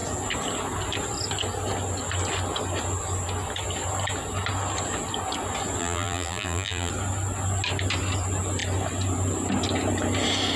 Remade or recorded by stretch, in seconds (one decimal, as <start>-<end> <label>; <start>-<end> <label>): 0.0-5.8 recorded; 5.8-6.9 remade; 6.9-10.6 recorded